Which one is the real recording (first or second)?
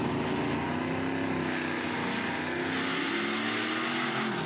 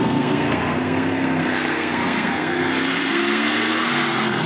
first